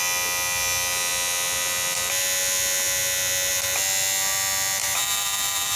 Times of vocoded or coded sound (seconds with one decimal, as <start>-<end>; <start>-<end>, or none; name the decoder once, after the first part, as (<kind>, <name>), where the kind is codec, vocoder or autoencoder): 4.8-5.8 (vocoder, BigVGAN v2)